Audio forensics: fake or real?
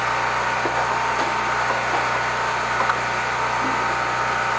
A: real